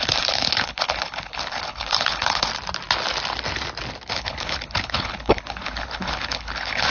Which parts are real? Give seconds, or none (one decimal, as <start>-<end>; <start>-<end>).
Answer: 2.5-4.1

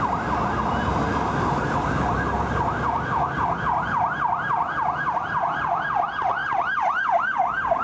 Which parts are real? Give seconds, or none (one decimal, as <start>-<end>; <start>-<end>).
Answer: 0.0-7.8

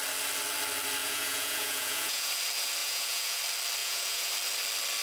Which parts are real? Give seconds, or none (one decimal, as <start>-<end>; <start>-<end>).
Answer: 0.0-1.0; 2.3-2.8; 3.4-3.8; 4.3-5.0

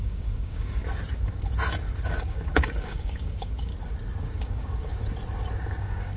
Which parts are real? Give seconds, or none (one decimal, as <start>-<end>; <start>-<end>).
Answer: 0.8-2.2; 3.7-4.2; 5.0-5.8

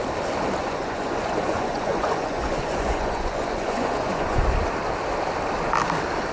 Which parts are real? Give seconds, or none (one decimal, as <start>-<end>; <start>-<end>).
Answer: 0.0-0.6; 4.4-6.3

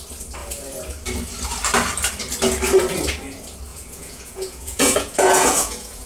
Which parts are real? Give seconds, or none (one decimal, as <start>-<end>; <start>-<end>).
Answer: 0.0-3.7

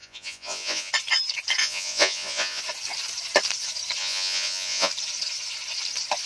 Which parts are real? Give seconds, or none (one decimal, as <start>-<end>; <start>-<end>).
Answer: 0.9-1.6; 2.6-4.0; 4.9-6.3

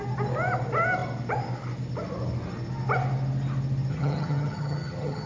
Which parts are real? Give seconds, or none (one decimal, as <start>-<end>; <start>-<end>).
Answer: 0.0-3.9